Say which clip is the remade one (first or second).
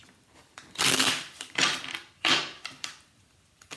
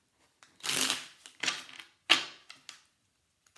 first